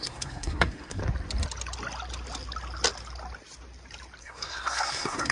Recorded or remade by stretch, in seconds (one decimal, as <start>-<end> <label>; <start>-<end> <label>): 0.0-1.0 remade; 1.0-4.2 recorded; 4.2-5.3 remade